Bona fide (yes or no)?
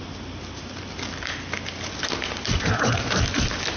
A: yes